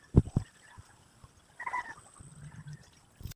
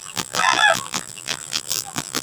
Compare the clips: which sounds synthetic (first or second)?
second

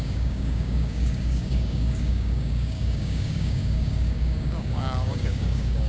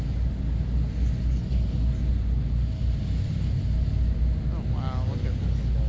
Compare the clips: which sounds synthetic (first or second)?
first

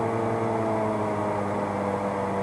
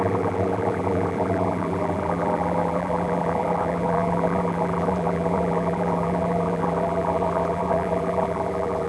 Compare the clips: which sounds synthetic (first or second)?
second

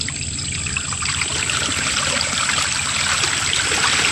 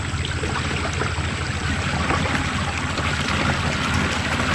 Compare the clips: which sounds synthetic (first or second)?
first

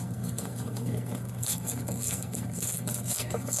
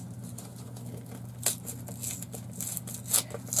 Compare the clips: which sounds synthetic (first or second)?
first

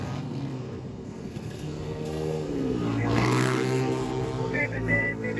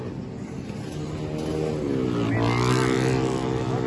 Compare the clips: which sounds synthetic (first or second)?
first